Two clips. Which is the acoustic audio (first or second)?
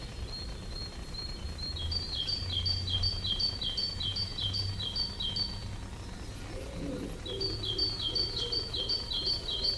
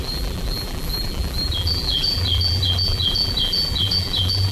first